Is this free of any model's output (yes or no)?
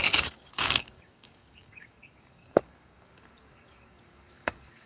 no